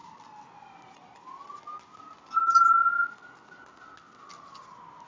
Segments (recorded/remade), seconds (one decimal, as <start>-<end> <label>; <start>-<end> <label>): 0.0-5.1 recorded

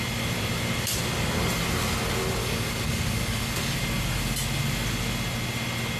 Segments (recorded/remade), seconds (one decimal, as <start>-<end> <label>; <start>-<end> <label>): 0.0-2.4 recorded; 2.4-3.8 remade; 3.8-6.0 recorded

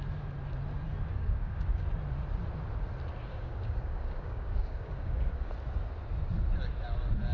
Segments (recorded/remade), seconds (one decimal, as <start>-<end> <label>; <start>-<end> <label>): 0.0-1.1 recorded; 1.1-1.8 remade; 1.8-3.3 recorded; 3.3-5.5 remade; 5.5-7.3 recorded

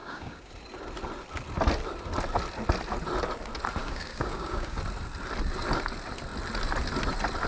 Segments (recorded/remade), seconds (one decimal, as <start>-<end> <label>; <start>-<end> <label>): 0.0-0.5 remade; 0.5-3.8 recorded; 3.8-4.8 remade; 4.8-7.5 recorded